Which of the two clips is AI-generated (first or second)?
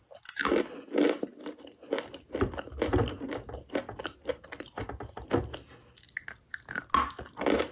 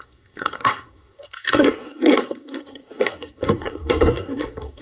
second